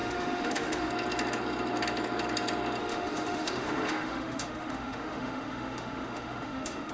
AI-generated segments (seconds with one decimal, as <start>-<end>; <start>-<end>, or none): 0.0-0.9; 2.8-6.9